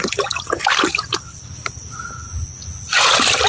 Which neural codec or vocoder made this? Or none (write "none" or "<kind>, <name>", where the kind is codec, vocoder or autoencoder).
none